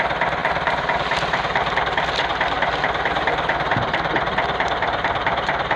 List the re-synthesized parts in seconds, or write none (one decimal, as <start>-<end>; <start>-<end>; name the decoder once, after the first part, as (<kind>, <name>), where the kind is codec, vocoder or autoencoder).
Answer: 0.4-1.8 (vocoder, BigVGAN v2); 2.3-5.8